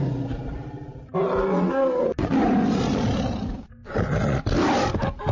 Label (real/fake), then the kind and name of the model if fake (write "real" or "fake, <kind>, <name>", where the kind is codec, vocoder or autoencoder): real